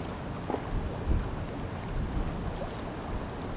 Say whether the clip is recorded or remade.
recorded